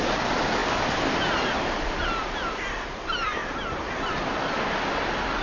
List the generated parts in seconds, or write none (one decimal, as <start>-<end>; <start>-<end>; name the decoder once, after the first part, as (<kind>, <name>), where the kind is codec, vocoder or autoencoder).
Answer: none

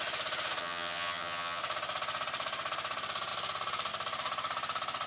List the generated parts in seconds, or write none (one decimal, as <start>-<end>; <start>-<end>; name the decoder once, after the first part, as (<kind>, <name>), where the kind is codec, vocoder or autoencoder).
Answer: 0.6-1.6 (vocoder, HiFi-GAN)